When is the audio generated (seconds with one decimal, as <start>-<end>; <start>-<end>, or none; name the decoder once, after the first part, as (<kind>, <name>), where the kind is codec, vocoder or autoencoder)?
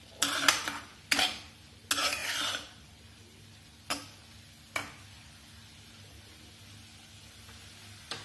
none